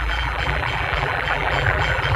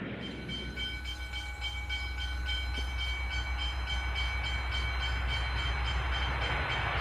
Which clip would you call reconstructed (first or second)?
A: first